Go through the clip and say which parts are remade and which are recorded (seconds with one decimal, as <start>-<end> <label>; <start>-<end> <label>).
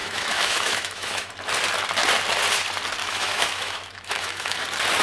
0.0-1.3 remade; 1.3-3.0 recorded; 3.0-4.6 remade; 4.6-5.0 recorded